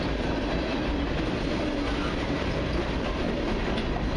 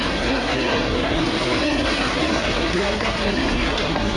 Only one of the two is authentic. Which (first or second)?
first